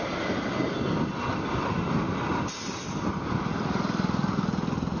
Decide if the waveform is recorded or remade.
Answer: recorded